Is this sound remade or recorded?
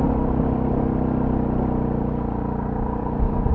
recorded